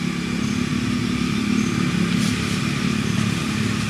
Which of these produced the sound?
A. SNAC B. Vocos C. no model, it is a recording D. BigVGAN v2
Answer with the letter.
C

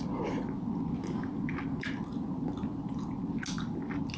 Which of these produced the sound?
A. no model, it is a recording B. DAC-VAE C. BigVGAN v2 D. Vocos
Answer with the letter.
A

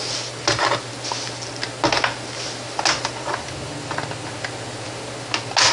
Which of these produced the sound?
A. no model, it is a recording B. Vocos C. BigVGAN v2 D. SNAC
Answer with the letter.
A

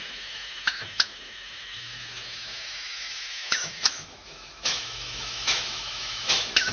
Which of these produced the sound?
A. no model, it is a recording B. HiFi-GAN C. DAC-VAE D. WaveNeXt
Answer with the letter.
C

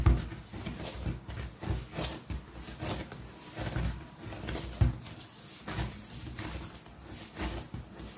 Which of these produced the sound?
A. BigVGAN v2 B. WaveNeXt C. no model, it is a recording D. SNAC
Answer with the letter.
C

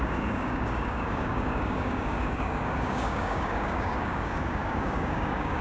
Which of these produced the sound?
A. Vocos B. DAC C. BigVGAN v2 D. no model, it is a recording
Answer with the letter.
B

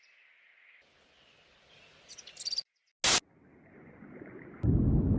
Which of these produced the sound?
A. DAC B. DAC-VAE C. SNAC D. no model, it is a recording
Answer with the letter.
D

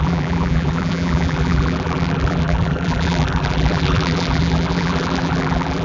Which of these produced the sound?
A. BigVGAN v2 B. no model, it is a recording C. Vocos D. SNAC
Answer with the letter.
A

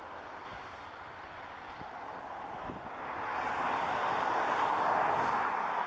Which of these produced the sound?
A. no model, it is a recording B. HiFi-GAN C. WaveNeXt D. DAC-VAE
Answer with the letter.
A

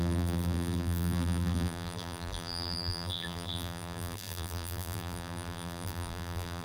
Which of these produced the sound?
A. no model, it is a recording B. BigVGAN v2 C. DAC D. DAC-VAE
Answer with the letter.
B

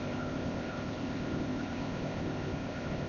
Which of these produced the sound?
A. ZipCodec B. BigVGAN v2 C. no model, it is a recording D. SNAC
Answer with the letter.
A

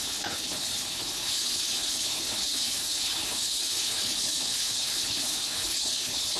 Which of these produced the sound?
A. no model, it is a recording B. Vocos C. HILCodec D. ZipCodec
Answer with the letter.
C